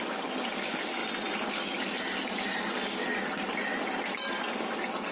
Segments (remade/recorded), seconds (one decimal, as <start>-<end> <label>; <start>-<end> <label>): 0.0-1.0 remade; 1.0-4.1 recorded; 4.1-5.1 remade